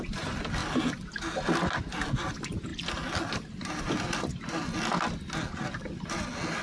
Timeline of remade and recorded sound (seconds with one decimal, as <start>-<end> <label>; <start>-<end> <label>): 0.0-6.6 recorded